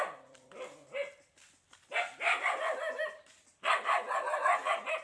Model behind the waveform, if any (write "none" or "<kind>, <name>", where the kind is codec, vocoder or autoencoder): none